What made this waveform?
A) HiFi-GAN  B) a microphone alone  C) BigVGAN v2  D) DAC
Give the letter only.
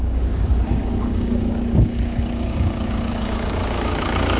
D